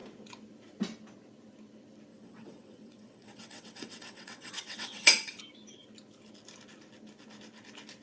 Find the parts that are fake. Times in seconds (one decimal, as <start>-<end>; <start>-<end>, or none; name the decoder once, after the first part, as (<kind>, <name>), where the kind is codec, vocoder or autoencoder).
2.1-5.4 (vocoder, WaveNeXt)